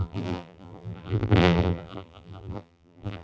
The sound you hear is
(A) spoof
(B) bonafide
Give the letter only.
A